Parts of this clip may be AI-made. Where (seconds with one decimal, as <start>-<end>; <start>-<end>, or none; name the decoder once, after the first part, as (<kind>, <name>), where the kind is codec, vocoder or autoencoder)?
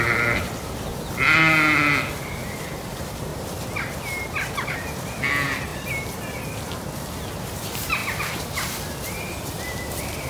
0.0-0.9 (vocoder, BigVGAN v2); 2.9-3.3; 5.2-5.7; 7.4-8.0; 9.2-10.3